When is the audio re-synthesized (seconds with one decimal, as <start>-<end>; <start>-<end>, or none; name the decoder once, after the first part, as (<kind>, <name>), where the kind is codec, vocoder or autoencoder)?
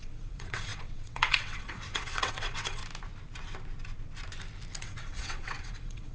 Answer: 0.0-2.8 (vocoder, WaveNeXt); 4.8-6.1